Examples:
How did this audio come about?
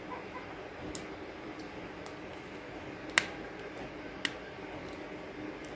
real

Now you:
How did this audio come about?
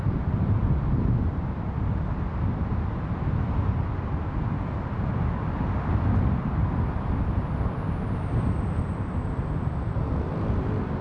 real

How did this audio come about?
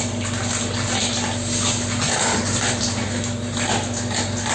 real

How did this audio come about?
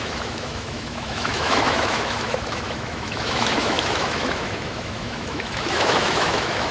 fake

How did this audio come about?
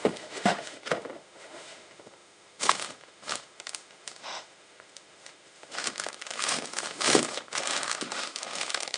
fake